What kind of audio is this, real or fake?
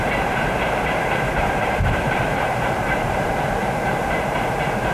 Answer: fake